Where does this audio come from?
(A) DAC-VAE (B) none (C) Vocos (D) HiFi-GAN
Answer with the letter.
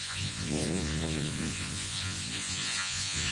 C